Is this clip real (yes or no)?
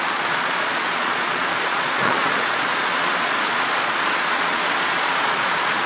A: no